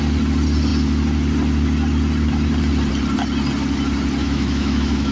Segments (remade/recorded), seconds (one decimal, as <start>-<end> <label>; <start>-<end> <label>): 0.0-4.2 recorded; 4.2-5.1 remade